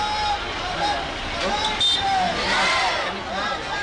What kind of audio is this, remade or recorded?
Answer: recorded